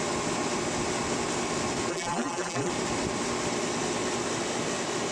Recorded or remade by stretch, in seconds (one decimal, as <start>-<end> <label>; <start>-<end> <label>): 0.0-1.9 recorded; 1.9-2.7 remade; 2.7-5.1 recorded